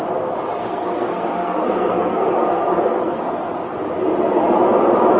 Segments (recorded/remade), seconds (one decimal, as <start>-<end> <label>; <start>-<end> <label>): 0.0-0.6 recorded; 0.6-3.2 remade; 3.2-5.2 recorded